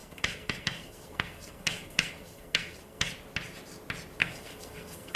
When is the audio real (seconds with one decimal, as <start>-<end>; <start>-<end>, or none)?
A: 3.1-4.2